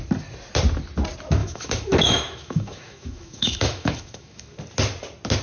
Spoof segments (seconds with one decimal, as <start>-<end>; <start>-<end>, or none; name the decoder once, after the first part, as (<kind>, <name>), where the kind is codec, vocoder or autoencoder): 1.4-4.6 (autoencoder, DAC-VAE)